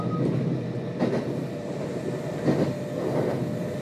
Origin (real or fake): real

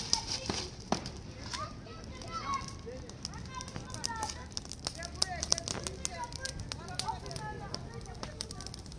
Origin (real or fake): real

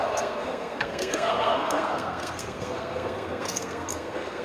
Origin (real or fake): fake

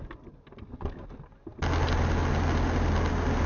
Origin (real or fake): real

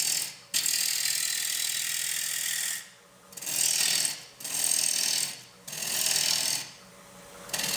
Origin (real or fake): real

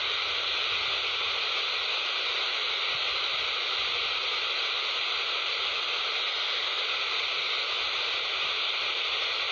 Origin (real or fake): real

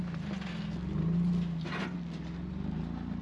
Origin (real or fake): real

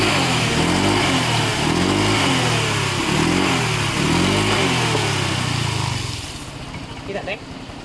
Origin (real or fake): real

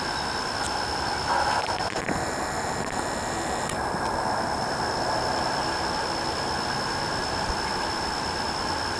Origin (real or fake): real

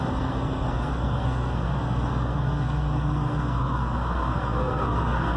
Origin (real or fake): fake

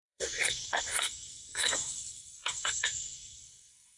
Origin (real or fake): fake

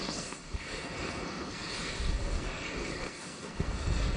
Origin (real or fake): fake